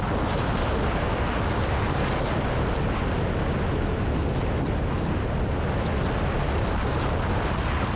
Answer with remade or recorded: recorded